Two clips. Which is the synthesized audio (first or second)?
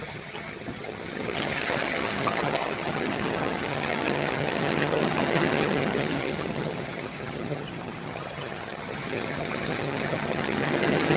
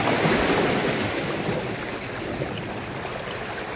first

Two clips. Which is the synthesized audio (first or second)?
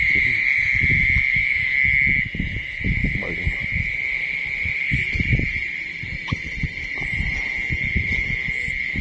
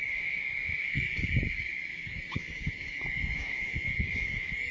second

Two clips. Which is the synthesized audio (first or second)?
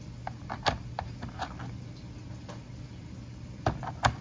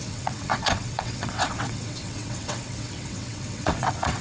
second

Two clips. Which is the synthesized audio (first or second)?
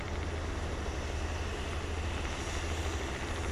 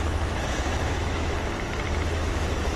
second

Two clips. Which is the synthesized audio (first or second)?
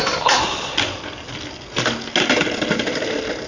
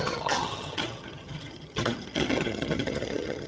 second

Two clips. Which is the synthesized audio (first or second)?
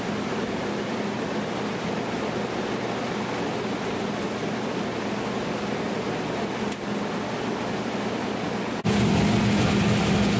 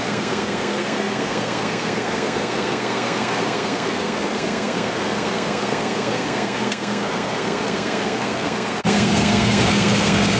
second